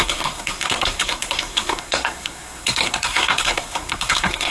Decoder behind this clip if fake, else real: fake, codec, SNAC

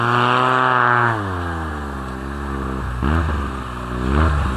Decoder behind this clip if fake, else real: real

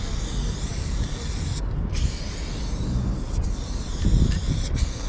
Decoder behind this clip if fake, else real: real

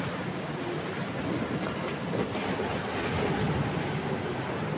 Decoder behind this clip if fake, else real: real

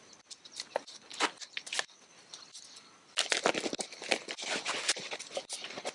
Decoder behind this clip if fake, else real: real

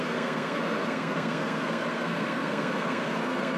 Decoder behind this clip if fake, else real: fake, codec, SNAC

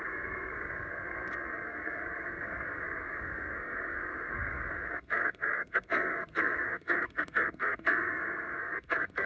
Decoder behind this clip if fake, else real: fake, codec, SNAC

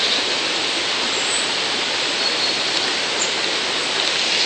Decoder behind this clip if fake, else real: real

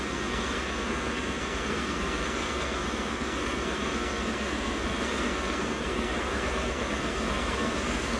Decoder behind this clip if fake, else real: fake, codec, SNAC